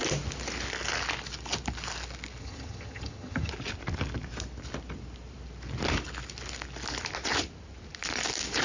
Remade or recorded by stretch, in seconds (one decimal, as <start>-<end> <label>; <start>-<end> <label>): 0.0-2.4 recorded; 2.4-3.5 remade; 3.5-8.6 recorded